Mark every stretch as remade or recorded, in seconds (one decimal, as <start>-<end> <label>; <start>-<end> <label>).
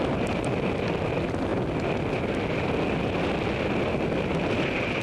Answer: 0.0-5.0 recorded